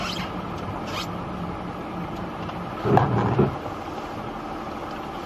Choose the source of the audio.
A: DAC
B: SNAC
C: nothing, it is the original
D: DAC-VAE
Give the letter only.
C